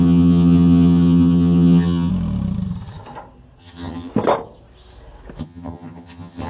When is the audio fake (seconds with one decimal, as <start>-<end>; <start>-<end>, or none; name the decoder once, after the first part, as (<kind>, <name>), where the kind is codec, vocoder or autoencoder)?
0.0-2.1 (vocoder, HiFi-GAN); 3.6-4.1; 5.4-6.5